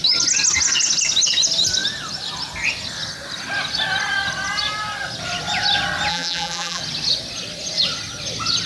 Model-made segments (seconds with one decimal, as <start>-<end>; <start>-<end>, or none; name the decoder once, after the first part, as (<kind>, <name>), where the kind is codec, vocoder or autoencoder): 6.1-6.8 (vocoder, BigVGAN v2)